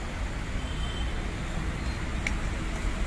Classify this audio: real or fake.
real